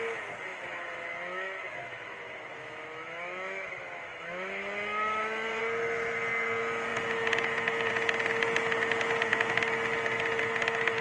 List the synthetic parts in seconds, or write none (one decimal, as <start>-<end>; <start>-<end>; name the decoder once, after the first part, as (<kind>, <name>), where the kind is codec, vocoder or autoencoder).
0.5-5.6 (autoencoder, DAC-VAE)